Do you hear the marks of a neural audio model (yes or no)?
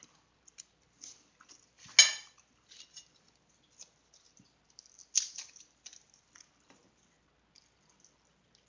no